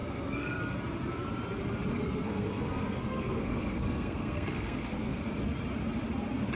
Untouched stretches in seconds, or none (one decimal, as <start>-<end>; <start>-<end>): 0.6-2.0; 5.2-6.6